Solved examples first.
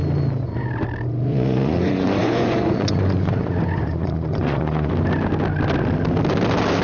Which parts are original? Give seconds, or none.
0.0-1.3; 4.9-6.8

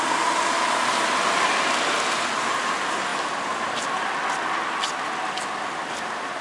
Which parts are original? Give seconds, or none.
0.0-6.4

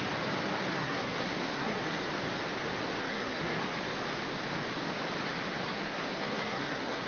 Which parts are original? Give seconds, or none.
0.0-0.7; 2.0-3.0; 3.6-5.6